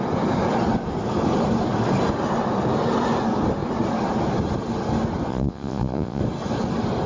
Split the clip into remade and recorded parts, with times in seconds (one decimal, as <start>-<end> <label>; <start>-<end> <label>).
0.0-5.3 recorded; 5.3-6.2 remade; 6.2-7.1 recorded